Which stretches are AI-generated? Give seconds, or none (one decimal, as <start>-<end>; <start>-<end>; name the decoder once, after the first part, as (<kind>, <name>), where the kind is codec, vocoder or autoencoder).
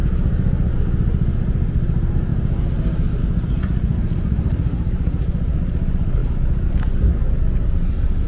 3.9-5.3 (vocoder, BigVGAN v2)